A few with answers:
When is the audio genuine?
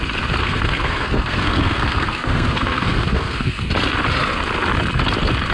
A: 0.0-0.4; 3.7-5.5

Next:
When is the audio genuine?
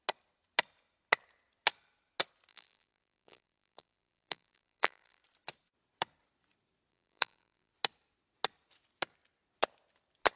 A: 0.0-2.5; 5.2-6.9; 7.7-10.4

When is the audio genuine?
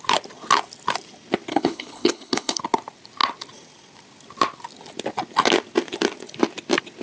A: 0.0-1.5; 2.6-7.0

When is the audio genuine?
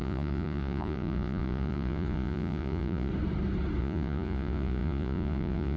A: 3.1-3.8